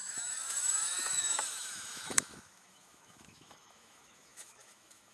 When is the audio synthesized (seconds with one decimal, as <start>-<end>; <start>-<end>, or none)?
0.0-5.1